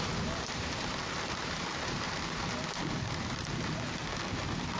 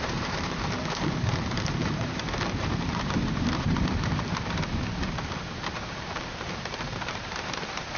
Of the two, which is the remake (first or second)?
second